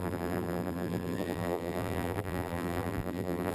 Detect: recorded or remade remade